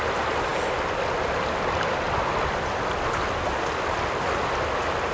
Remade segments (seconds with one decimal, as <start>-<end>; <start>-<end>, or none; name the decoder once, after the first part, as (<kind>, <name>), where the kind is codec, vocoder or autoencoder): none